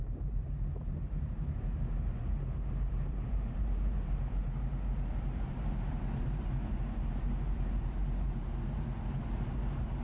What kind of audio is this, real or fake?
fake